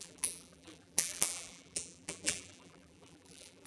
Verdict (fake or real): fake